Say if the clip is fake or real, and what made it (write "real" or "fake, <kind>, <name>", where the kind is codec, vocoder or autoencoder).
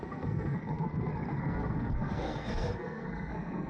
fake, codec, SNAC